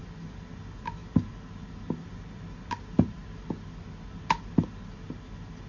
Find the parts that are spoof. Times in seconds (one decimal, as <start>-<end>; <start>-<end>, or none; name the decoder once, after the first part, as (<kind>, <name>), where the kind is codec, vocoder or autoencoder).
none